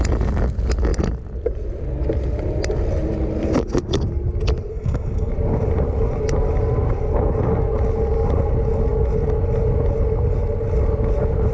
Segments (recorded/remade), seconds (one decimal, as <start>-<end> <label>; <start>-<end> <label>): 0.0-4.7 recorded; 4.7-5.3 remade; 5.3-11.5 recorded